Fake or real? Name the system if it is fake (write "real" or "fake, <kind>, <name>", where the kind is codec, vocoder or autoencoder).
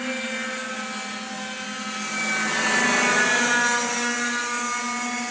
real